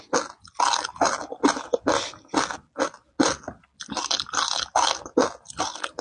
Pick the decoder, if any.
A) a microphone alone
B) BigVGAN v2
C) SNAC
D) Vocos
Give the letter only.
A